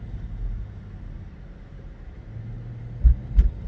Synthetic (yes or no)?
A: no